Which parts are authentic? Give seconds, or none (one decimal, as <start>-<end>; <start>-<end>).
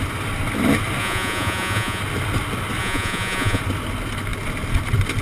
0.0-1.0; 2.0-2.8; 3.6-5.2